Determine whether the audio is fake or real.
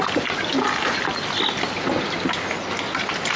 real